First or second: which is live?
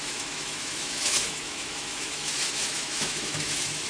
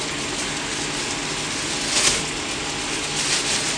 second